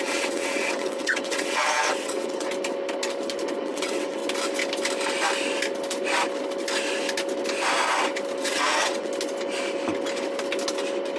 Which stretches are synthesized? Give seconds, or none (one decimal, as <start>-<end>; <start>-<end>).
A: 0.0-2.5; 3.6-4.2; 8.4-9.1